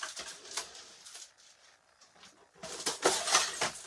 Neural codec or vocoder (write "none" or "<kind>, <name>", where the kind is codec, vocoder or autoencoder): none